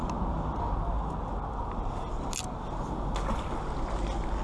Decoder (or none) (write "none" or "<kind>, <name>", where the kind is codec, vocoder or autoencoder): none